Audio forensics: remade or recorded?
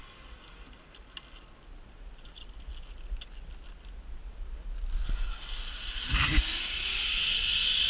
recorded